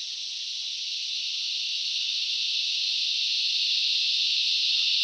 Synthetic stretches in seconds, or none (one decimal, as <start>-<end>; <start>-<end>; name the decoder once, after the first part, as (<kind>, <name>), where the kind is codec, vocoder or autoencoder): none